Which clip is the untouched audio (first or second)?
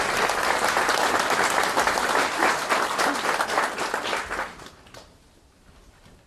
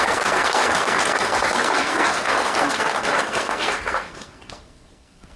first